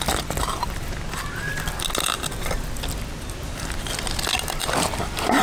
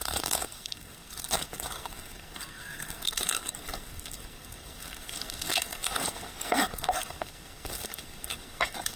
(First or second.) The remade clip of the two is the second